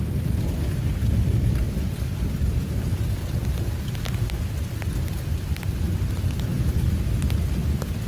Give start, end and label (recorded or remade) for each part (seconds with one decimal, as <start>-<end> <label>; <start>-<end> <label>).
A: 0.0-8.1 recorded